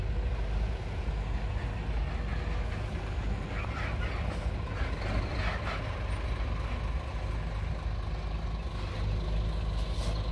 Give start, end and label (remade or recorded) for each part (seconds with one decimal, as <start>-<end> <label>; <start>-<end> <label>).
0.0-10.3 recorded